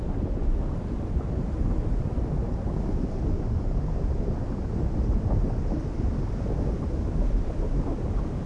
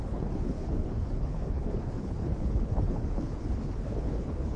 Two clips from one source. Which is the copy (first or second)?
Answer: second